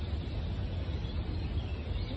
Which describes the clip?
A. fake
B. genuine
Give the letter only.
B